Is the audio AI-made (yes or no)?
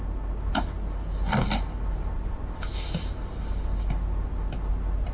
no